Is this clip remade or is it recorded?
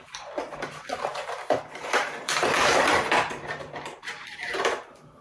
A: remade